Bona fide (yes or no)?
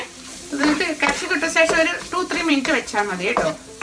no